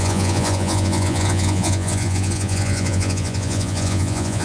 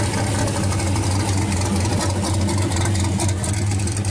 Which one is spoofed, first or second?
first